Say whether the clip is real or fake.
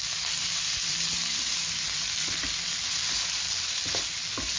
real